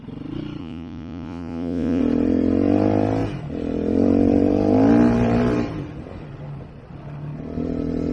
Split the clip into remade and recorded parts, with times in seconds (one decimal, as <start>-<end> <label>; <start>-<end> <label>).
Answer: 0.0-0.6 recorded; 0.6-2.0 remade; 2.0-8.1 recorded